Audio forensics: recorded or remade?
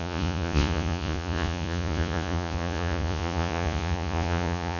remade